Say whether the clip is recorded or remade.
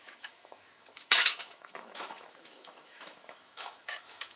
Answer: remade